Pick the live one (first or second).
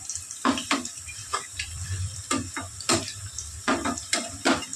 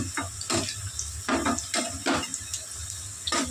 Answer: second